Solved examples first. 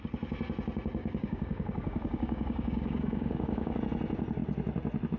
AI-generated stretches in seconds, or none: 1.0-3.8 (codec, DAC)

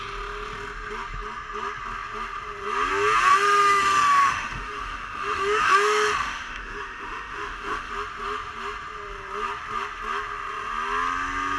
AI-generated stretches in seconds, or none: 3.3-7.9 (autoencoder, DAC-VAE)

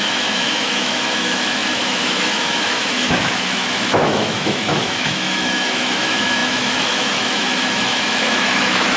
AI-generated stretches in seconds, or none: 0.0-9.0 (autoencoder, DAC-VAE)

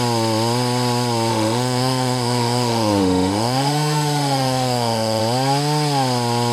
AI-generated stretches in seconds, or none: 1.3-5.2 (autoencoder, DAC-VAE)